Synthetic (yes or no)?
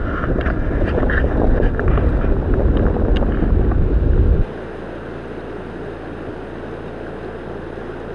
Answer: no